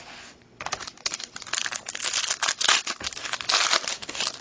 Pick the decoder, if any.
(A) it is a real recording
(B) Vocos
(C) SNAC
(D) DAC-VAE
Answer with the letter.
A